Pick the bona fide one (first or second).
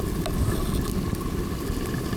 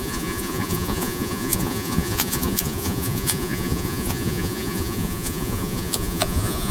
first